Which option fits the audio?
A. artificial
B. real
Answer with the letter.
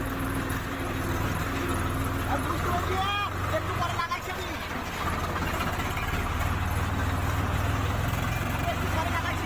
B